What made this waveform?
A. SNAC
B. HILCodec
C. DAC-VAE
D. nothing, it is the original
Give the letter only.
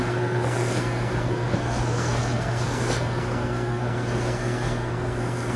A